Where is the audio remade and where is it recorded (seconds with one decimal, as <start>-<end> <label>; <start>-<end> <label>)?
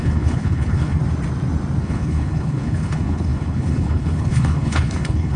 0.0-1.0 remade; 1.0-1.8 recorded; 1.8-5.4 remade